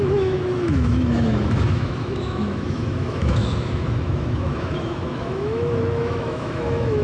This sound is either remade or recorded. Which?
remade